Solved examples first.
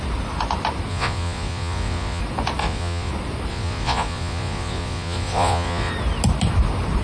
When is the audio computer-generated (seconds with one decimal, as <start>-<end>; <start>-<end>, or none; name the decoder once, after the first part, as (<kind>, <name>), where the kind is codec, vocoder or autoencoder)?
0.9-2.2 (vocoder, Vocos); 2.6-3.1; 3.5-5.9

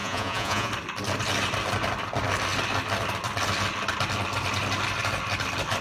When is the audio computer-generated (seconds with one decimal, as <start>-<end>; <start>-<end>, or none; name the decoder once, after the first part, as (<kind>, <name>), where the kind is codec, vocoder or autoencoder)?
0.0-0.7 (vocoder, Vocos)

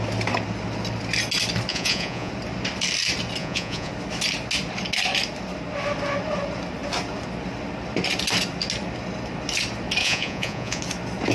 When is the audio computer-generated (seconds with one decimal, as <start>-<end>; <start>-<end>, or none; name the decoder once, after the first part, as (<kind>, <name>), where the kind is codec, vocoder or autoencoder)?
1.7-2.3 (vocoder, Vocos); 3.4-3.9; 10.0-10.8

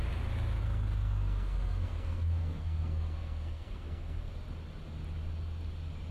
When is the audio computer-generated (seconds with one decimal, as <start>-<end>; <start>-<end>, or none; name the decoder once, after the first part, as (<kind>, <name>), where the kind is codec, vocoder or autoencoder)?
0.6-4.3 (codec, SNAC)

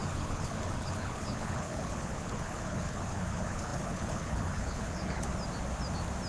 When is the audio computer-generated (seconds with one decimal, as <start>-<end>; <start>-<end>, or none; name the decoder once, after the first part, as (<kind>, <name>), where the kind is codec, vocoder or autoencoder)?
0.0-5.3 (codec, HILCodec)

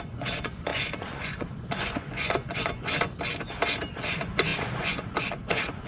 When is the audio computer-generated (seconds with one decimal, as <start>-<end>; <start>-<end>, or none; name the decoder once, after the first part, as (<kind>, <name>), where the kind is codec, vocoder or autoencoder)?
0.0-3.1 (vocoder, Vocos); 3.9-5.9